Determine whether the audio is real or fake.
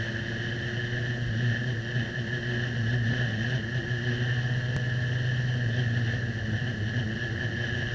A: real